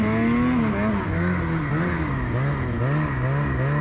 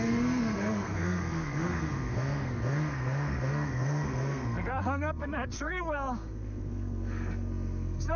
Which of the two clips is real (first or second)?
first